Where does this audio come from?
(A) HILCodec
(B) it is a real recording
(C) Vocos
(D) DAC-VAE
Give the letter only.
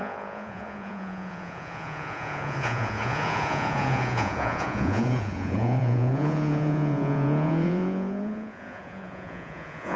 C